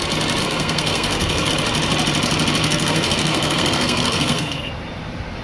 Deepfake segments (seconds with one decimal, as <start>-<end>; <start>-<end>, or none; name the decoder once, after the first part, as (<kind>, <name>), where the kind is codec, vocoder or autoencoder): 0.4-1.5 (codec, SNAC); 2.6-4.7